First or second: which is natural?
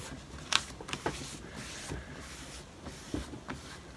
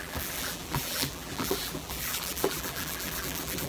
first